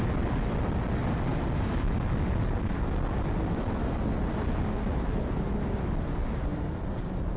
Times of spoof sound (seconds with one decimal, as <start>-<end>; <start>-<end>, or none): none

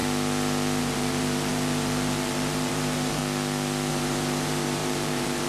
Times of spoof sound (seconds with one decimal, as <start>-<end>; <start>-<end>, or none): 0.8-3.2; 3.9-5.5